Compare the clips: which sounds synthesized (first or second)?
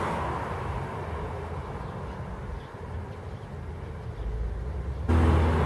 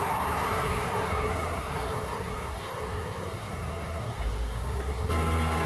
second